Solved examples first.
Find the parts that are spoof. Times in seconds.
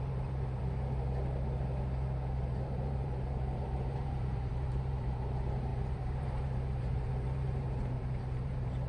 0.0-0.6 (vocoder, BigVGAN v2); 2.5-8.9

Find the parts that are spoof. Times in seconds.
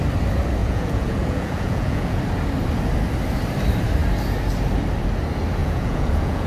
0.6-2.2 (vocoder, Vocos); 5.6-6.5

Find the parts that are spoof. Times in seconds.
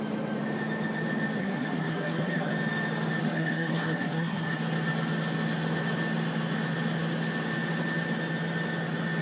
1.4-2.5 (codec, SNAC); 3.2-4.6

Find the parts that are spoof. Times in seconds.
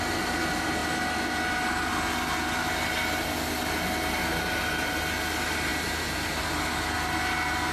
4.3-5.0 (vocoder, BigVGAN v2); 5.7-6.4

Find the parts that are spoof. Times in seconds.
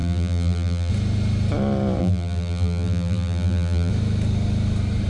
0.0-0.9 (vocoder, BigVGAN v2); 2.0-3.9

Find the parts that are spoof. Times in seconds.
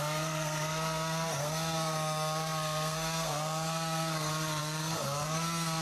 0.0-5.8 (codec, SNAC)